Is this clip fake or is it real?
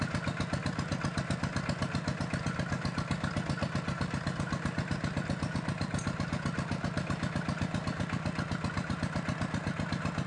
real